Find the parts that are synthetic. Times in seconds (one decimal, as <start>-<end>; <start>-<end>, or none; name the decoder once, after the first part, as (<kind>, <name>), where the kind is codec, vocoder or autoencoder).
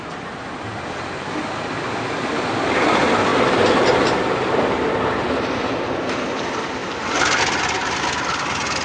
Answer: none